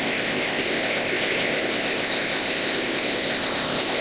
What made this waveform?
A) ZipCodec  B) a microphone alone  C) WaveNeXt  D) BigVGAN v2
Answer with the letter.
A